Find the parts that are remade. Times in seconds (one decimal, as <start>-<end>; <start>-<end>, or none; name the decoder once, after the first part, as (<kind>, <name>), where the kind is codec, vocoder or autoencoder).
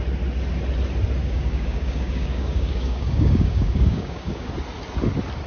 1.2-4.5 (codec, DAC)